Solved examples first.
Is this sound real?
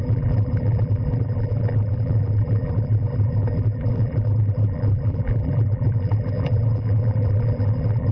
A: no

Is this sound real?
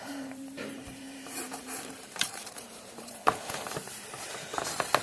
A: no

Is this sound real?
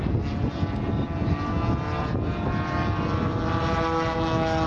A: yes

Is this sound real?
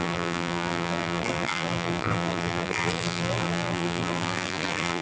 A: no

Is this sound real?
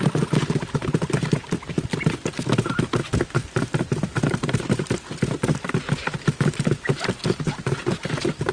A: yes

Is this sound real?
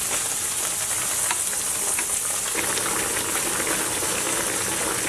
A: yes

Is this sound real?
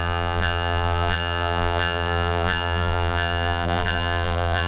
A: no